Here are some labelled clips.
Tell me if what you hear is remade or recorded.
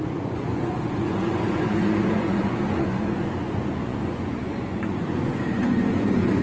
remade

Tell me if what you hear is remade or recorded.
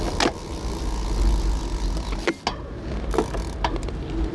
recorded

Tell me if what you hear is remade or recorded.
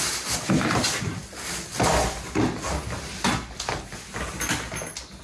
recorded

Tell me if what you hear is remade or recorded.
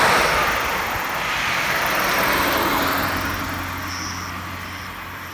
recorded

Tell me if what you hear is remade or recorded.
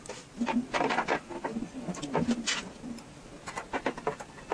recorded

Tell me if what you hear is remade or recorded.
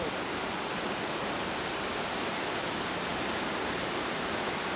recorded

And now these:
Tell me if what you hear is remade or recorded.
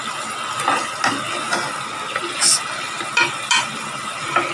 recorded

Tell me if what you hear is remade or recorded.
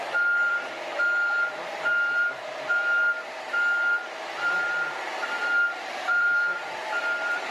remade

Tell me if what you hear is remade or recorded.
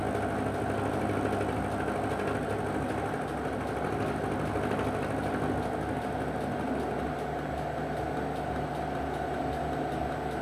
recorded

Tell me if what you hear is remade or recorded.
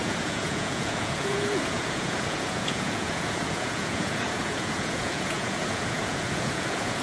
remade